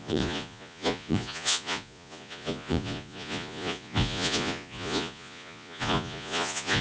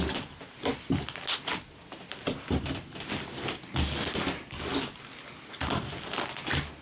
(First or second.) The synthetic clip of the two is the first